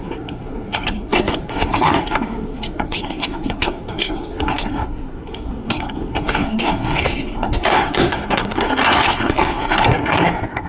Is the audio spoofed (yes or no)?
yes